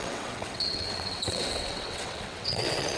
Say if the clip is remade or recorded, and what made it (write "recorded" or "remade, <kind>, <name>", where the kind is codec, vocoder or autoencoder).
remade, vocoder, WaveNeXt